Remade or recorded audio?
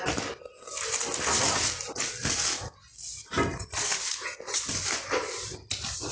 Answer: recorded